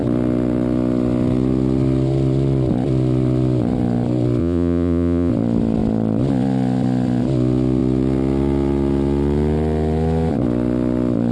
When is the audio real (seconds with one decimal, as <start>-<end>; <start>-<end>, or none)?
0.0-4.4; 5.3-11.3